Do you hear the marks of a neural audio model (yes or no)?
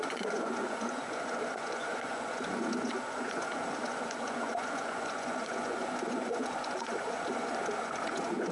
yes